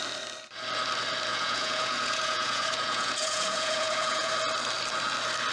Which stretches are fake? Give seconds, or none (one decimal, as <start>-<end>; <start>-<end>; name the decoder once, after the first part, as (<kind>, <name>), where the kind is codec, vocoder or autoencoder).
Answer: 1.3-4.3 (vocoder, Vocos)